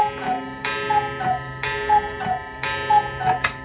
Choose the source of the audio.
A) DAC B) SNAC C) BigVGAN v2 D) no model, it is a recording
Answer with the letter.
D